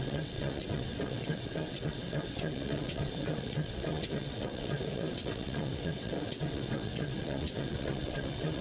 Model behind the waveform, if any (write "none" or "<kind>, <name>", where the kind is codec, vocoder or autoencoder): vocoder, WaveNeXt